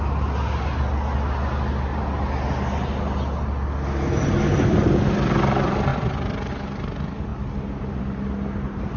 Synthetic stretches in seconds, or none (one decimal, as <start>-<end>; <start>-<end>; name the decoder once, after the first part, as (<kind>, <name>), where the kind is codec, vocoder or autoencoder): none